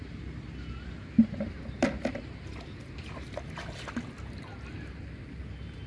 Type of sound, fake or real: real